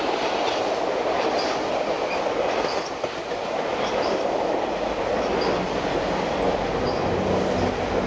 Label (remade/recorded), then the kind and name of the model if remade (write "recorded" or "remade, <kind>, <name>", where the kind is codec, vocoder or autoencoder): recorded